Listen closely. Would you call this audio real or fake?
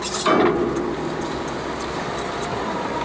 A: real